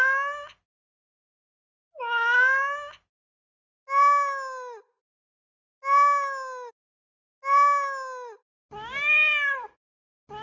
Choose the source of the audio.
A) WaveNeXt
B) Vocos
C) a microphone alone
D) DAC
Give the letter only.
C